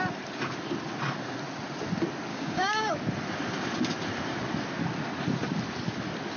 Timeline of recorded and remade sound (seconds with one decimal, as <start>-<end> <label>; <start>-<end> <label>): 0.0-2.3 recorded; 2.3-2.9 remade; 2.9-6.4 recorded